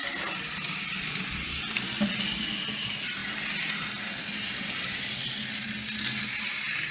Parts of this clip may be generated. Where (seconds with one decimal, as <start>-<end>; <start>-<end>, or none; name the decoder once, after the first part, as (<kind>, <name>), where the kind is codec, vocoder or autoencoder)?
none

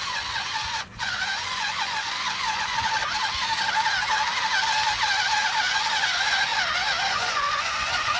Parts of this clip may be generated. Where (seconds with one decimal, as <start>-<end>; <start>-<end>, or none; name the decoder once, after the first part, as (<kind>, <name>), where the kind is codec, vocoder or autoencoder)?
0.0-3.0 (vocoder, Vocos); 5.7-6.5; 7.1-8.2

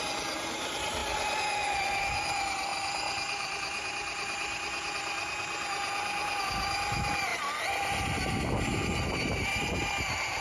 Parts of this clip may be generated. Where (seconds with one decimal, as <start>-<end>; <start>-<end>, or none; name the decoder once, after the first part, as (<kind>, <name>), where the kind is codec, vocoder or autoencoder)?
none